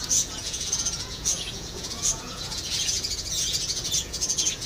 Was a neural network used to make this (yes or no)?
yes